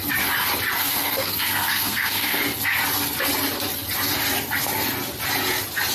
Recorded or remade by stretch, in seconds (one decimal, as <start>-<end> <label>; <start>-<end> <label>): 0.0-0.8 recorded; 0.8-2.4 remade; 2.4-5.9 recorded